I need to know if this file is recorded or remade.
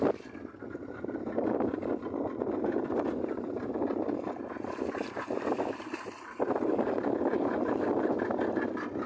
recorded